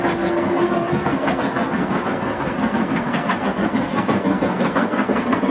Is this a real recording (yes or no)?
no